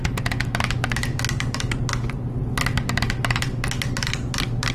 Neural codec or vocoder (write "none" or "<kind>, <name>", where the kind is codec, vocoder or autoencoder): none